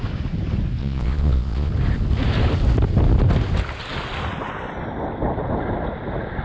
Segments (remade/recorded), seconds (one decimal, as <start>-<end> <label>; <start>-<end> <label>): 0.0-0.8 recorded; 0.8-1.7 remade; 1.7-6.4 recorded